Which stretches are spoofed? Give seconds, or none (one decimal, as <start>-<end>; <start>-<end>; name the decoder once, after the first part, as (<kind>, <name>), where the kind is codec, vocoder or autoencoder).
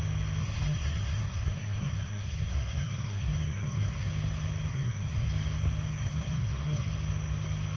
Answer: 0.4-4.1 (codec, SNAC); 4.7-5.3; 5.9-6.9